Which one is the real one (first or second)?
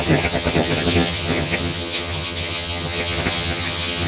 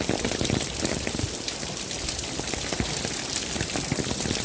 second